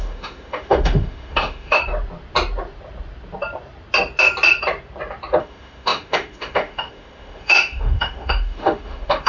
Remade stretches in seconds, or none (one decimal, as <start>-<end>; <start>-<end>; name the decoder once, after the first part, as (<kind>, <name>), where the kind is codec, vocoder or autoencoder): 0.0-1.8 (autoencoder, DAC-VAE); 5.4-9.3